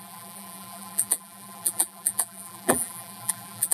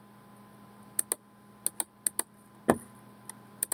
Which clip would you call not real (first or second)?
first